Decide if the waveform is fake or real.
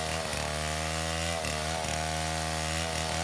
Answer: real